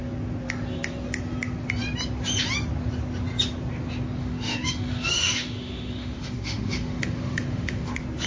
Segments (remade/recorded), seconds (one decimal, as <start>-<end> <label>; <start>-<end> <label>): 0.0-4.2 recorded; 4.2-7.9 remade; 7.9-8.3 recorded